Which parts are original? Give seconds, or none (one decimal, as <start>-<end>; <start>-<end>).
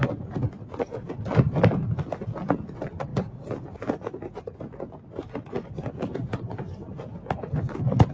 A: 0.0-8.1